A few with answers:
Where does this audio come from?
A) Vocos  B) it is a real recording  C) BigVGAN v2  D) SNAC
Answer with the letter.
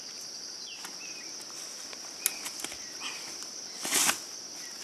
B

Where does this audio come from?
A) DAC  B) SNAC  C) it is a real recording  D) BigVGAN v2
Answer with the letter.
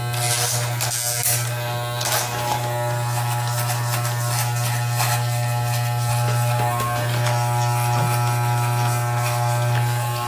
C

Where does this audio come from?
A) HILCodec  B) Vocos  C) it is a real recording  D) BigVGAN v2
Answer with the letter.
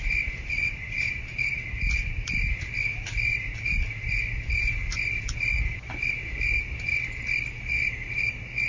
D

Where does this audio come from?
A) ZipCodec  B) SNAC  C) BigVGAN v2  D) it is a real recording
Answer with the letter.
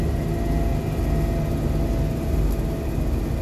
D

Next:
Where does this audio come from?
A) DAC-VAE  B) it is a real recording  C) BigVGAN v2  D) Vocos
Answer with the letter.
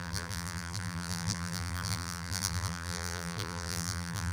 C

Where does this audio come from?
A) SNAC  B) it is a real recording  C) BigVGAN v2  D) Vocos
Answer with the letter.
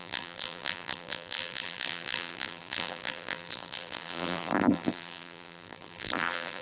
C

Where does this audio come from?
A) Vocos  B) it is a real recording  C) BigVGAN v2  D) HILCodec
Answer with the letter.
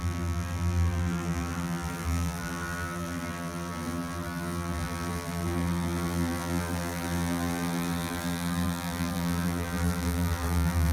C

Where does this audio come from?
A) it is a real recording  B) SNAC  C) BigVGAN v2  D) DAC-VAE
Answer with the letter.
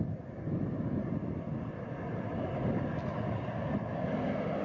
A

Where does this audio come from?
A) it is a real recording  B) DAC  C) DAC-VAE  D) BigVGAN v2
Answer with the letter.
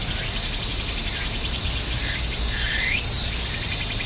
A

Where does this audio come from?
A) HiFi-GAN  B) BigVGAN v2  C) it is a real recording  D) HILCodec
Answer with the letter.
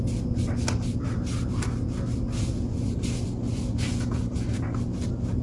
C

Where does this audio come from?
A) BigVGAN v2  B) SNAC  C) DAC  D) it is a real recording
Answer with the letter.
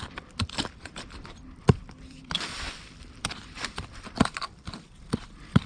A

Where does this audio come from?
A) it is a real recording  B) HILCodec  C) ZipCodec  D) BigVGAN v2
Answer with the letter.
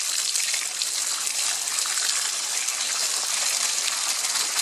A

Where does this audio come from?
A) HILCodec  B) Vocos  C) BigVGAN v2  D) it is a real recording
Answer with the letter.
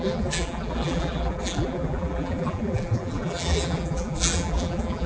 C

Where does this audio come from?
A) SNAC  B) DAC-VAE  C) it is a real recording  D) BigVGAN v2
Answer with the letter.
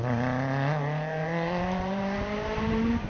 D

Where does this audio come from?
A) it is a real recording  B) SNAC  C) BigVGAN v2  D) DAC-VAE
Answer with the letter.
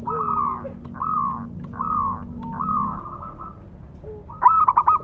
A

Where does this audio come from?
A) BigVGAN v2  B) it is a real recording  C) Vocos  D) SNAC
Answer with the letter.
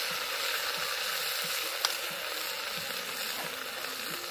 B